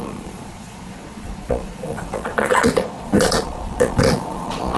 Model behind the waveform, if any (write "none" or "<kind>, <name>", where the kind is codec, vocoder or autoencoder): vocoder, Vocos